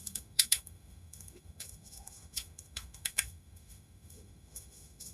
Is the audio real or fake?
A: fake